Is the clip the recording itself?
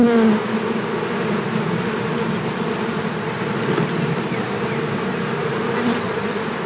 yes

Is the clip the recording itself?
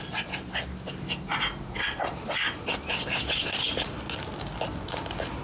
yes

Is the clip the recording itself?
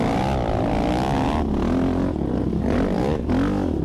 yes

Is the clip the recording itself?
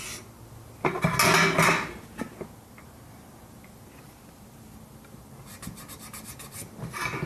yes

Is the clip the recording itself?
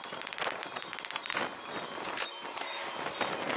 yes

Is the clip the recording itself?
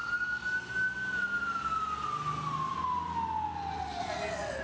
yes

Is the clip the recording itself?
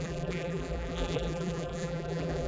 no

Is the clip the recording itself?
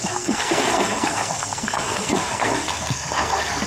no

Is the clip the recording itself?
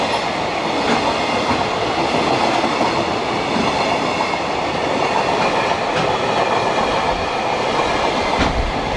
yes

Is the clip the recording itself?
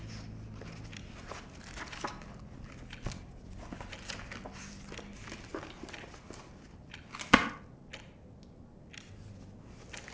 yes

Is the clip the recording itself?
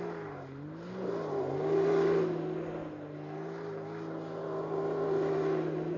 yes